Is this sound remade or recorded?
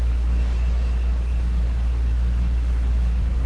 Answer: remade